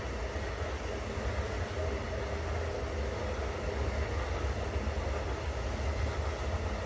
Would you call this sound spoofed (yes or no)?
no